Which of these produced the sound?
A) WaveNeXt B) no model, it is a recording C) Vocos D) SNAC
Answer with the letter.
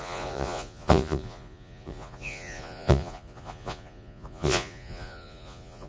C